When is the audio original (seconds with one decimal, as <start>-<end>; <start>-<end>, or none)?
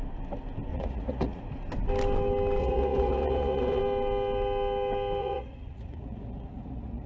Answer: 0.0-0.7; 1.4-2.6; 3.8-5.2